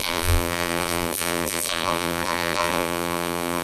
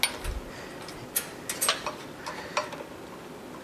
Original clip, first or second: second